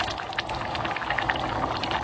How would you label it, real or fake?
real